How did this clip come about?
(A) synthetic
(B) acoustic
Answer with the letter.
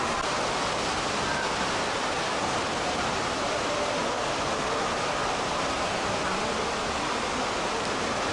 B